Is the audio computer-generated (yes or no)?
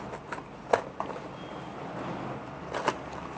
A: no